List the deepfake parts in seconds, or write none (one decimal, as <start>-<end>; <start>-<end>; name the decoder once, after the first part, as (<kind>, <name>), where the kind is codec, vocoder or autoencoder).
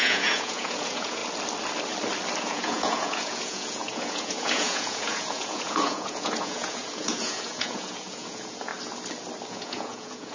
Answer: 0.0-1.2 (vocoder, Vocos); 2.4-8.7; 9.5-10.3